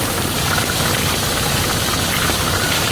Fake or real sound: fake